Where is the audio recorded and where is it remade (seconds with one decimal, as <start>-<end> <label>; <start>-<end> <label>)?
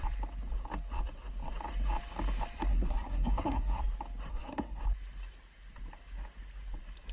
0.0-2.7 recorded; 2.7-3.8 remade; 3.8-4.3 recorded; 4.3-4.8 remade; 4.8-7.1 recorded